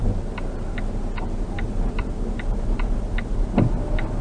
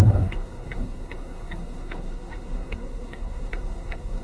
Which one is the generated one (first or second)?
second